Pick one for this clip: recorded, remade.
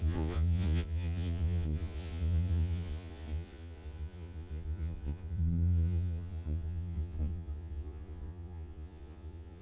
remade